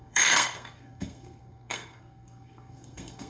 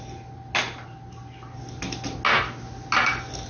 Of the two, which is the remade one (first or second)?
first